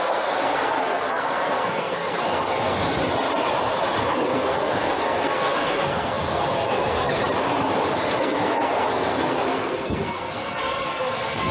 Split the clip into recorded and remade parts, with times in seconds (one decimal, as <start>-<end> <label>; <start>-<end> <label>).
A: 0.0-2.8 remade; 2.8-4.0 recorded; 4.0-7.2 remade; 7.2-8.2 recorded; 8.2-11.5 remade